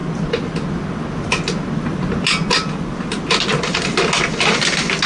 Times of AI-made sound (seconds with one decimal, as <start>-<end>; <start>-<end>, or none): none

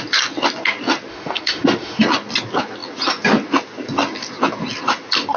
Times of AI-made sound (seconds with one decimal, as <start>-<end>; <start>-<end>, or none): 1.1-2.0

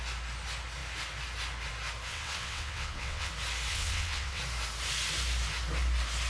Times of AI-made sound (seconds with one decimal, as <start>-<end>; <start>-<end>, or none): 2.1-3.3; 3.7-4.4